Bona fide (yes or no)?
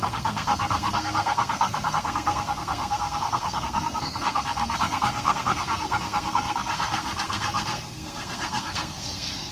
no